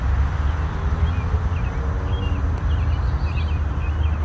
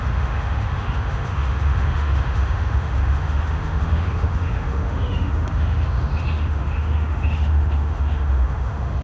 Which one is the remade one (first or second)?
second